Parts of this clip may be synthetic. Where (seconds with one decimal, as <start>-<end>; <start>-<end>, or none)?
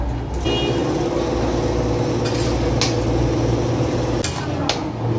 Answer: none